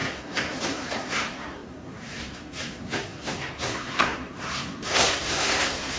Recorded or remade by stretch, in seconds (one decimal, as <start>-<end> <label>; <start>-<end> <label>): 0.0-6.0 remade